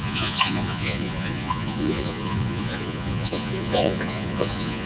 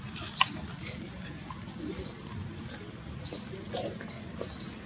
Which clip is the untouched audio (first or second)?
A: second